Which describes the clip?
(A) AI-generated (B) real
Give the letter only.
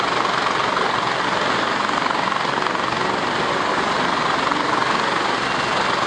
B